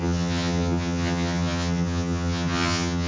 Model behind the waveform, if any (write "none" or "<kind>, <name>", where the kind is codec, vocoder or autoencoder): vocoder, HiFi-GAN